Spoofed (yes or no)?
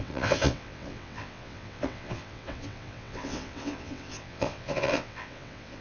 yes